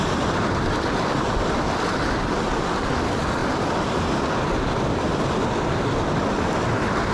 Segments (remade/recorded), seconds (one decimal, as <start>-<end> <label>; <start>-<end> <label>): 0.0-3.4 recorded; 3.4-5.2 remade; 5.2-7.1 recorded